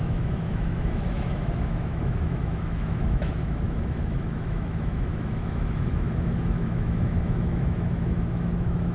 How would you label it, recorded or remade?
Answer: remade